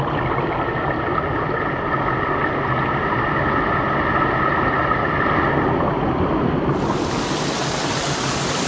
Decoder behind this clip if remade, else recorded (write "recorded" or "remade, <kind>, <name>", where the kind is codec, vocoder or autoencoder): recorded